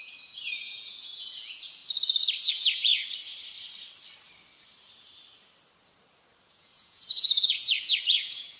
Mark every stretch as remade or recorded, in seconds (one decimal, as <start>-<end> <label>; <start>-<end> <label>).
0.0-1.8 remade; 1.8-2.5 recorded; 2.5-2.9 remade; 2.9-6.5 recorded; 6.5-8.6 remade